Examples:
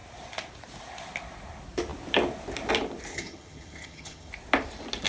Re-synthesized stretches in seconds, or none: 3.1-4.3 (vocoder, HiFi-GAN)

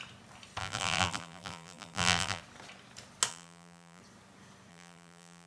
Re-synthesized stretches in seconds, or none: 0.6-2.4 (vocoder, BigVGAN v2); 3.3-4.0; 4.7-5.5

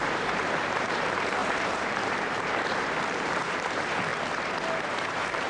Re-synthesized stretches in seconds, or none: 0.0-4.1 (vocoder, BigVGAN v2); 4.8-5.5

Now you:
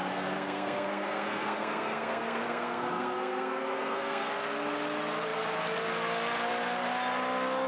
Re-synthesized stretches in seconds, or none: 0.0-4.3 (codec, SNAC)

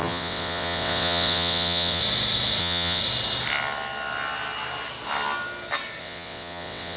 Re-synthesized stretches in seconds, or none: 0.0-2.0 (vocoder, WaveNeXt); 2.6-3.0; 6.0-7.0